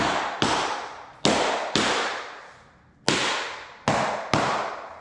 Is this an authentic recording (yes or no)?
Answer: yes